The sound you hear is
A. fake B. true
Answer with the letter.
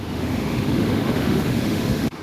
A